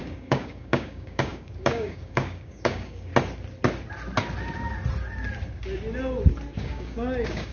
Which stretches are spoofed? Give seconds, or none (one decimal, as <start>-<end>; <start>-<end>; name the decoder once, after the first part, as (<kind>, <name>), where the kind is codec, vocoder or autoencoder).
0.0-3.1 (codec, DAC); 6.6-7.5